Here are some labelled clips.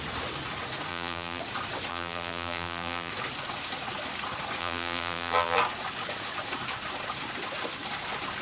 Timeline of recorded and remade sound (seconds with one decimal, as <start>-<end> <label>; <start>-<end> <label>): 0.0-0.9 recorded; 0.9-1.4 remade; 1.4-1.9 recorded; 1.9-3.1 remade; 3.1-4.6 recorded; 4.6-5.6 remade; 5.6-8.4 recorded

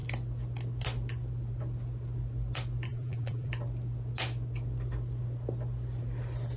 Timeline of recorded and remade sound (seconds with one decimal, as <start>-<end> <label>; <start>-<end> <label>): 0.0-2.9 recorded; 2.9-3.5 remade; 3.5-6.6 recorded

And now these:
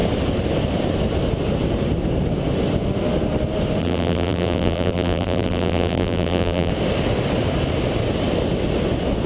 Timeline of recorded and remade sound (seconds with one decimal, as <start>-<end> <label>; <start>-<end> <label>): 0.0-3.8 recorded; 3.8-6.7 remade; 6.7-9.3 recorded